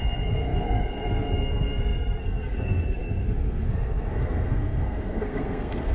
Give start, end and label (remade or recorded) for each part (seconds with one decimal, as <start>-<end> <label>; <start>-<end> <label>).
0.0-5.9 remade